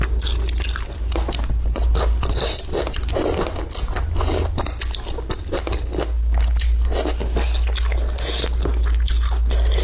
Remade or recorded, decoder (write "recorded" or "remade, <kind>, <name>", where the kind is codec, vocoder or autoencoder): recorded